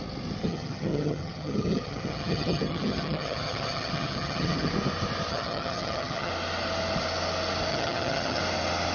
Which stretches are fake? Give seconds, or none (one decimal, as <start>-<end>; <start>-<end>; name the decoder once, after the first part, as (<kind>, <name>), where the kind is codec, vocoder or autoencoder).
0.4-4.7 (vocoder, HiFi-GAN); 5.3-6.3; 7.7-8.4